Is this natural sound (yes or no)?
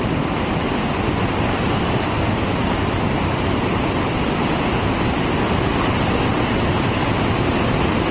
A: yes